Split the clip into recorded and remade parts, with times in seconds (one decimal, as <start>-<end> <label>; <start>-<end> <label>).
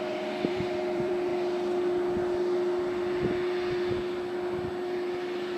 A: 0.0-1.3 remade; 1.3-4.7 recorded; 4.7-5.6 remade